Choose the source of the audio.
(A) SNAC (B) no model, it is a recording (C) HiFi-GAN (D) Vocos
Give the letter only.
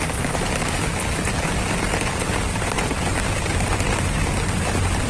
B